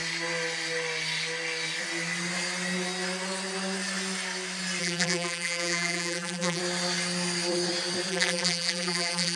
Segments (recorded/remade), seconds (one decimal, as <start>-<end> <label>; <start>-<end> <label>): 0.0-4.8 recorded; 4.8-6.6 remade; 6.6-8.1 recorded; 8.1-9.4 remade